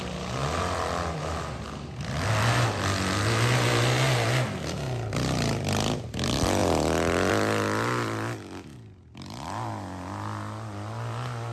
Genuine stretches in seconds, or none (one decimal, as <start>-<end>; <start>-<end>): 0.0-11.5